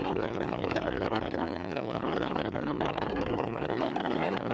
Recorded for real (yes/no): no